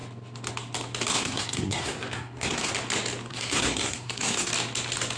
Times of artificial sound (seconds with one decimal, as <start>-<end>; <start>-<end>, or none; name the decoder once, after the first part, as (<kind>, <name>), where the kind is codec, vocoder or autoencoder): 1.1-2.7 (codec, SNAC); 3.3-4.5